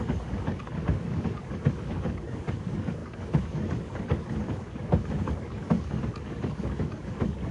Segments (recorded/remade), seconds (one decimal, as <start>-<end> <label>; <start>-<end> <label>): 0.0-7.5 remade